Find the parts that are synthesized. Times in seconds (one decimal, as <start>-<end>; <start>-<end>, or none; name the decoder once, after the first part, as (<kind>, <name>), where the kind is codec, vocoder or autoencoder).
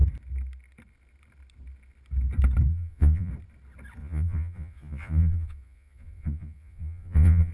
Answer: 2.7-3.3 (vocoder, Vocos); 4.0-7.5